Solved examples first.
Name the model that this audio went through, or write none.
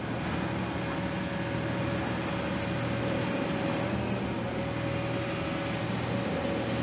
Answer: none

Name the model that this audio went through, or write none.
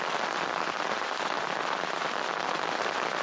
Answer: none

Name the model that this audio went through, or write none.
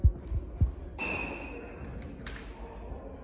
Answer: none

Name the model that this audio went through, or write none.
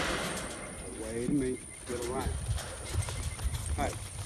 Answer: none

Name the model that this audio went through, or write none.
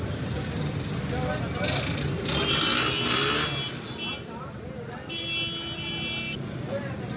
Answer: none